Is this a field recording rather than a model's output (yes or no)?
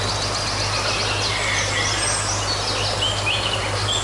yes